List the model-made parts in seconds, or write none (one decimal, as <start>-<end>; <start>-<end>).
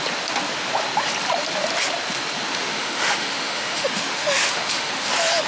2.5-4.9